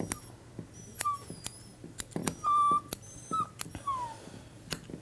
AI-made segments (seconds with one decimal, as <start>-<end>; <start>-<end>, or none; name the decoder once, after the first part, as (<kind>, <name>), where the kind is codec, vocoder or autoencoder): none

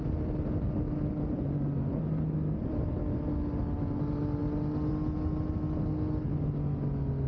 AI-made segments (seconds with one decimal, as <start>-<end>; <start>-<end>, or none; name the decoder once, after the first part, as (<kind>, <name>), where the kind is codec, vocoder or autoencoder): none